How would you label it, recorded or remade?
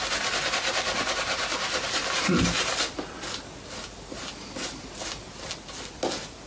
recorded